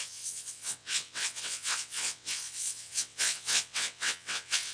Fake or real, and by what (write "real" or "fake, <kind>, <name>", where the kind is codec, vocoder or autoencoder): fake, vocoder, WaveNeXt